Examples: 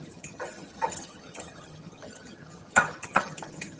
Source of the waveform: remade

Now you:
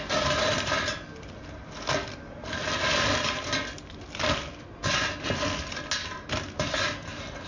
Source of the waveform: recorded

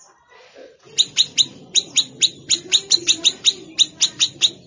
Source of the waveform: recorded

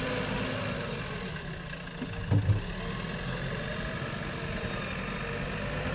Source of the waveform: recorded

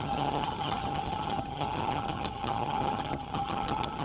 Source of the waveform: remade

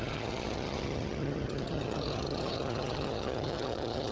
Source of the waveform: remade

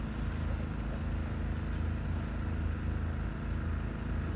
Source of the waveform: recorded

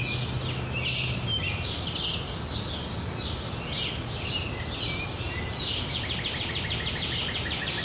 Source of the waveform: recorded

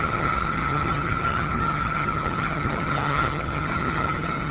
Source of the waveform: remade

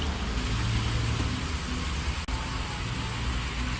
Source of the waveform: recorded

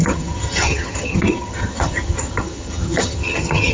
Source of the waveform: remade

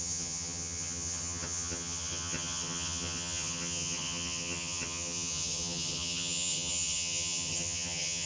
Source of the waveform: remade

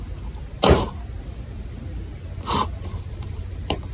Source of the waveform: recorded